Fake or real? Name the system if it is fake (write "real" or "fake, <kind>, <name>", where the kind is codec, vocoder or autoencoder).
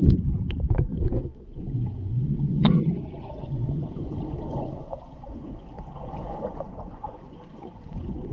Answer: fake, vocoder, Vocos